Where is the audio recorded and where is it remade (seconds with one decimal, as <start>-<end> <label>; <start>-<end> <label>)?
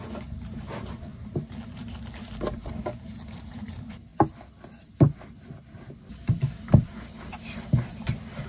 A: 0.0-8.5 recorded